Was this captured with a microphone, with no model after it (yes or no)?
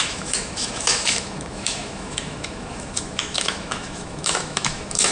no